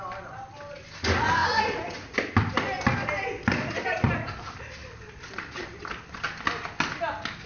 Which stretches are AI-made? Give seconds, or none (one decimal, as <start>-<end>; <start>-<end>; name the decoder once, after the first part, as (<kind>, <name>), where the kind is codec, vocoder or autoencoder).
none